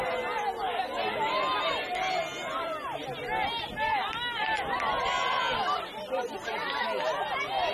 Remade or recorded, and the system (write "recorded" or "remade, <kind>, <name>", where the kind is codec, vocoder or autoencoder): recorded